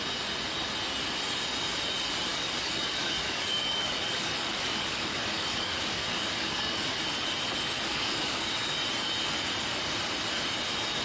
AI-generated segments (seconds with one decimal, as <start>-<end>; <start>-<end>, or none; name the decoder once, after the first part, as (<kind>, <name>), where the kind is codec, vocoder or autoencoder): 2.3-7.0 (codec, DAC); 7.9-8.7